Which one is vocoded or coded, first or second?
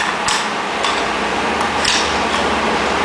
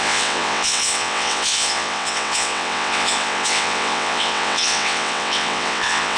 second